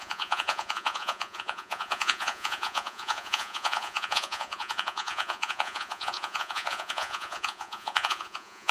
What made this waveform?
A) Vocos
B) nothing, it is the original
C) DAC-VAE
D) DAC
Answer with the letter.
A